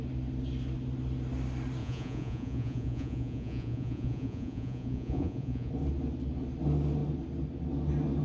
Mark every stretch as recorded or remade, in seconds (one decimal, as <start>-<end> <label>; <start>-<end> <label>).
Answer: 0.0-1.8 recorded; 1.8-5.7 remade; 5.7-8.2 recorded